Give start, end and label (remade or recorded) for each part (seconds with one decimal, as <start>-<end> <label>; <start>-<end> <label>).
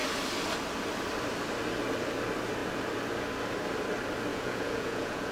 0.0-4.3 recorded; 4.3-5.3 remade